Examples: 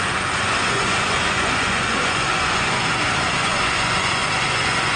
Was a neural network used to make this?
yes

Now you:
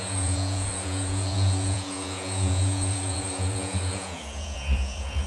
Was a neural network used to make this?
yes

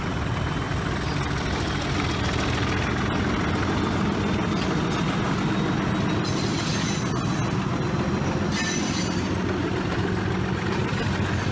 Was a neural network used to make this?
no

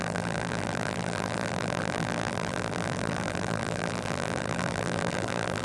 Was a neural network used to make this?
yes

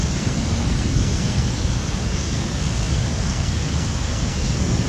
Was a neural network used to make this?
yes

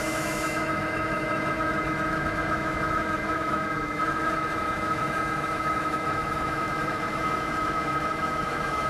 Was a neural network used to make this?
yes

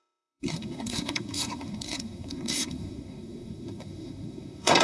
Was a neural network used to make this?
yes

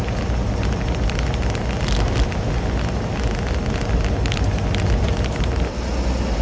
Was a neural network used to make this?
no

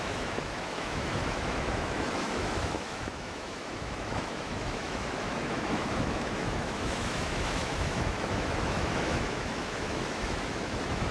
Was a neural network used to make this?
yes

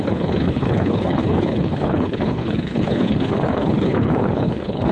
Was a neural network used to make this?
yes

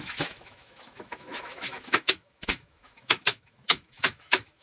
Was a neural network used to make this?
yes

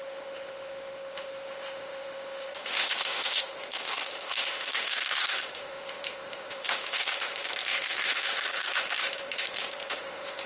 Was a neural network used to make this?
yes